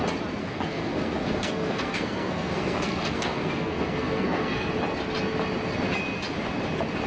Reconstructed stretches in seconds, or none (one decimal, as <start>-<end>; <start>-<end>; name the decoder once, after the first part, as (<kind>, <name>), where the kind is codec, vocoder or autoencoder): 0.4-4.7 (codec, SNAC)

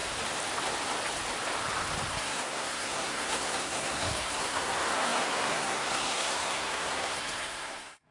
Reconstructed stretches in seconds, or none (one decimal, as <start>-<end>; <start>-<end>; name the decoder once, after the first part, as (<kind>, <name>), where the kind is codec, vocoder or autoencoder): 2.1-8.1 (codec, SNAC)

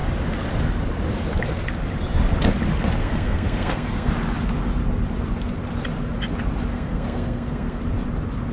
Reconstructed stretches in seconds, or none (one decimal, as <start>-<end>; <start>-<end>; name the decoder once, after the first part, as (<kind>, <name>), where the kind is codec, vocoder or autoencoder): 3.0-4.1 (codec, SNAC); 6.7-7.8

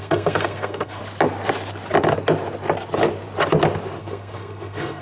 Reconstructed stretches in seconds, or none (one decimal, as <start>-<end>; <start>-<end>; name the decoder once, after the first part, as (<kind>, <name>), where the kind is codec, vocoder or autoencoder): 0.0-1.0 (codec, SNAC); 4.0-5.0

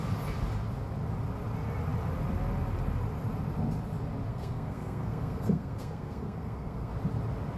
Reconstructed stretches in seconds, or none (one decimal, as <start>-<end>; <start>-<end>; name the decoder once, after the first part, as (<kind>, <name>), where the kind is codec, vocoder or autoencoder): 4.3-6.9 (codec, SNAC)

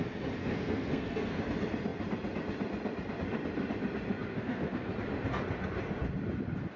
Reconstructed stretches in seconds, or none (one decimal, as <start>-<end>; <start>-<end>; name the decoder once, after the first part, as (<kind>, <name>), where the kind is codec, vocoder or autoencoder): 0.4-1.4 (codec, SNAC); 4.3-4.9